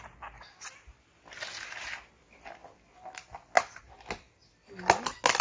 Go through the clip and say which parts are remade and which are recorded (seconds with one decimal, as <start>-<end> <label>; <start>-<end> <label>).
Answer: 0.0-5.4 recorded